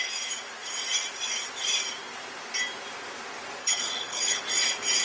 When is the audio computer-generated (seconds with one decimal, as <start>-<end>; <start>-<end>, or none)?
3.6-4.4